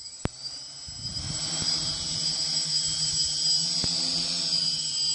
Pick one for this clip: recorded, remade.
recorded